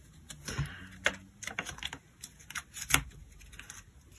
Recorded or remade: recorded